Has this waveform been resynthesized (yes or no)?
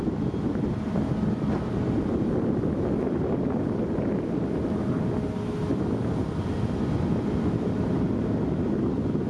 no